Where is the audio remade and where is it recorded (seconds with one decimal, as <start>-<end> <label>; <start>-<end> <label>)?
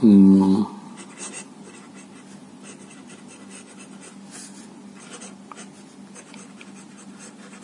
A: 0.0-7.6 recorded